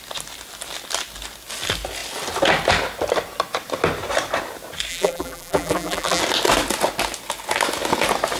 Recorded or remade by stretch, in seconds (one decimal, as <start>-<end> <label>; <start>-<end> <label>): 0.0-4.9 recorded; 4.9-6.2 remade; 6.2-8.4 recorded